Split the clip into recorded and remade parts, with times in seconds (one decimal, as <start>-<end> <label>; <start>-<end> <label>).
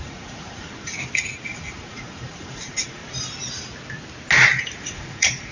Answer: 0.0-0.9 remade; 0.9-1.5 recorded; 1.5-3.0 remade; 3.0-4.8 recorded; 4.8-5.5 remade